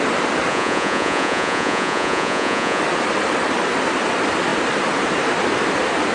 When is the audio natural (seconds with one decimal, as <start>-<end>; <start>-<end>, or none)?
0.0-0.5; 2.8-6.1